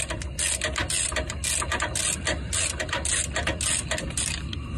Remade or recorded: recorded